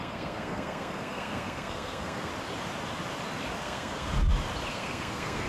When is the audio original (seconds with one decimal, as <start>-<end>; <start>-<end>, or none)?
2.3-3.6; 4.1-4.7